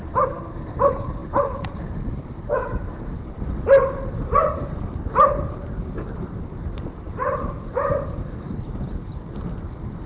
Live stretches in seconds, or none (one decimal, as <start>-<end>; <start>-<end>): none